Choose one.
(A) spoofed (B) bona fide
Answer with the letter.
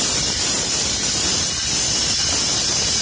B